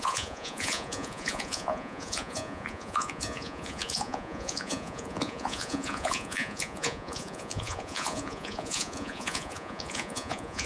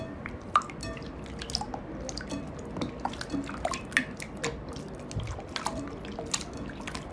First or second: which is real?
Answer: second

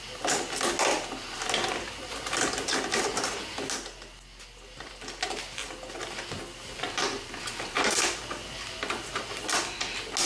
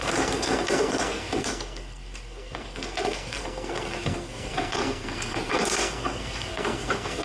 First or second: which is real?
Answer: first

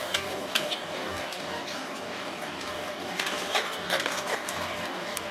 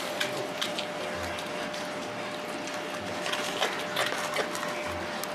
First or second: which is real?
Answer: second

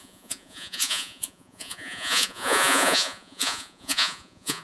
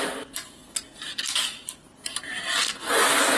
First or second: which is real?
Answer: second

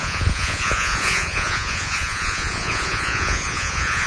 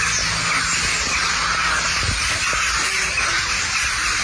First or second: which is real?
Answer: second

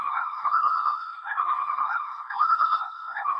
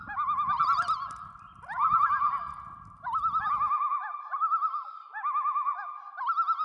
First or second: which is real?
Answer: second